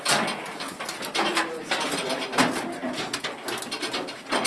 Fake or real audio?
real